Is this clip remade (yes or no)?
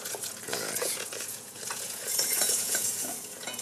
yes